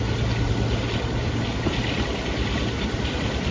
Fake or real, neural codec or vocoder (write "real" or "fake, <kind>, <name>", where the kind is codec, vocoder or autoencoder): real